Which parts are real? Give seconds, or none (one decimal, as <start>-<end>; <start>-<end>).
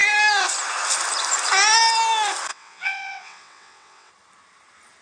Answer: 0.0-2.5; 4.1-5.0